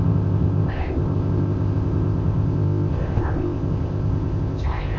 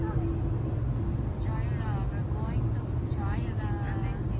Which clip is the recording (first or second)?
second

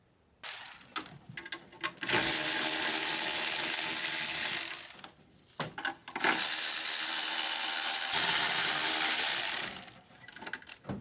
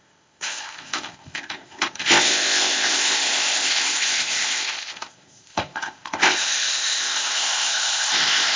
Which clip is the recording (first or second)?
first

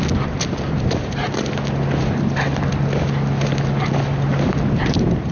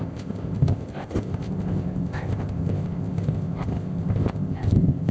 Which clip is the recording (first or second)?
first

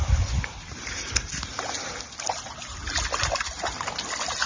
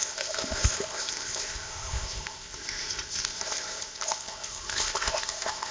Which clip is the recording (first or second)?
first